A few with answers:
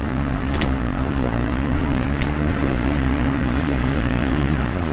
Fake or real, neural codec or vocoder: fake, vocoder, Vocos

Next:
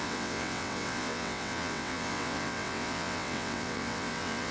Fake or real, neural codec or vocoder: fake, vocoder, WaveNeXt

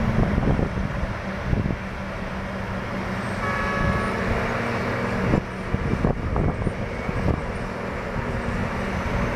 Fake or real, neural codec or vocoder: real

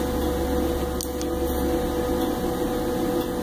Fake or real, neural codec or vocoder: real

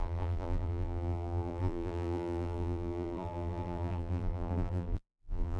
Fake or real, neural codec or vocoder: fake, vocoder, BigVGAN v2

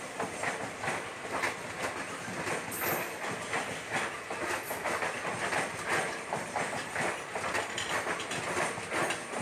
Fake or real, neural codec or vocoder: real